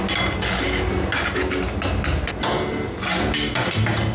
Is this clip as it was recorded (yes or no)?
yes